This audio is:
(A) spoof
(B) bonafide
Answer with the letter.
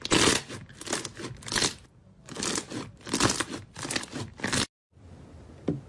B